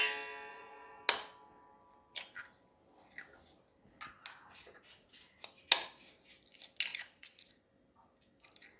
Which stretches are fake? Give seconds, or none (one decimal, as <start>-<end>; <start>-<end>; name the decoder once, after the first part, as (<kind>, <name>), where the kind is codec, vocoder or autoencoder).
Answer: 0.5-1.0 (vocoder, Vocos); 6.9-7.5